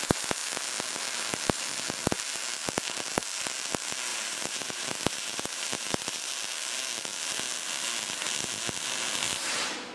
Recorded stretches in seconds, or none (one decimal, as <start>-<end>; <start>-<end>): 0.0-4.1; 6.3-9.9